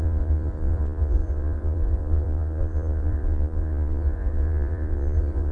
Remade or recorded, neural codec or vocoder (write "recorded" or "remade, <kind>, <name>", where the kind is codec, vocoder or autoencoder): remade, vocoder, Vocos